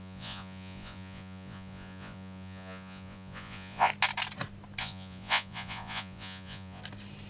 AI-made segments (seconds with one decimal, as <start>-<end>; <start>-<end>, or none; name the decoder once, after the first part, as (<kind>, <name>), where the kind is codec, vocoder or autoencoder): 0.0-3.9 (vocoder, Vocos); 4.8-6.8